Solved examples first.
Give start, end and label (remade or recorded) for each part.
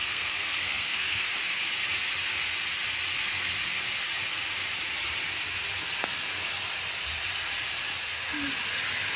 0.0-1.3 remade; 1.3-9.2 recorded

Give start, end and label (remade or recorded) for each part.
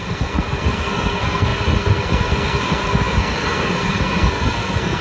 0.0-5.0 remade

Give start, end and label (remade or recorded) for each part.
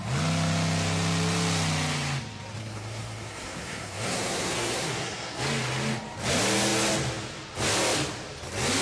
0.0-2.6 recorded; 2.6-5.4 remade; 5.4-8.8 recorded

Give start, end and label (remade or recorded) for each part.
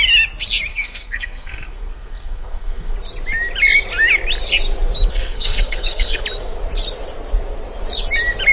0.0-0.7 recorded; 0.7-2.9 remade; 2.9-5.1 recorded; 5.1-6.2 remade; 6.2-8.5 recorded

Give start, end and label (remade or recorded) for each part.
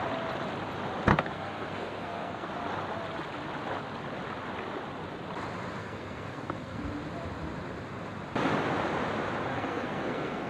0.0-1.1 recorded; 1.1-2.5 remade; 2.5-5.8 recorded; 5.8-6.9 remade; 6.9-9.5 recorded; 9.5-10.5 remade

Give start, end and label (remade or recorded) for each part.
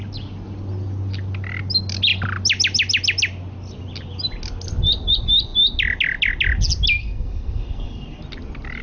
0.0-7.0 recorded; 7.0-8.2 remade; 8.2-8.8 recorded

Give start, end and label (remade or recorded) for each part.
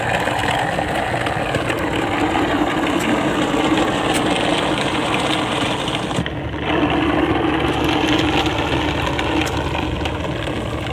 0.0-10.9 recorded